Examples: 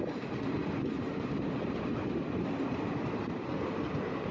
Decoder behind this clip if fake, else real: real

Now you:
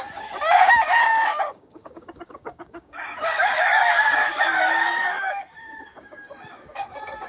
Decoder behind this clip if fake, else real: fake, codec, DAC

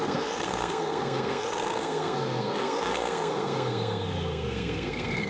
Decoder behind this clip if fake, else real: fake, codec, SNAC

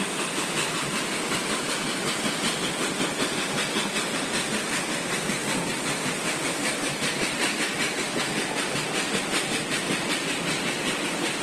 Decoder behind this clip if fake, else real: real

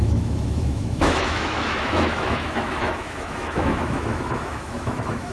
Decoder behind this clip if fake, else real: fake, autoencoder, DAC-VAE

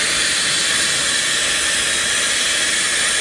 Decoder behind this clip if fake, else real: real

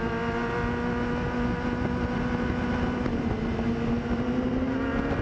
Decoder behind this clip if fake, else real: real